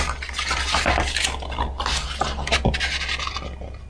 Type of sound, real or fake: real